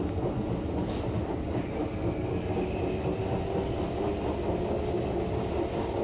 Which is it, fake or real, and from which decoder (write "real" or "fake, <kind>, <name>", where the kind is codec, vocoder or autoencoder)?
real